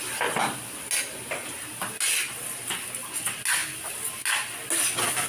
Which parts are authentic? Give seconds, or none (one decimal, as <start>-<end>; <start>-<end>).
0.0-5.3